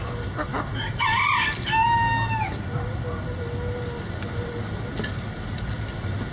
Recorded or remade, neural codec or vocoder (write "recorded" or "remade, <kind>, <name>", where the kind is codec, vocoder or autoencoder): recorded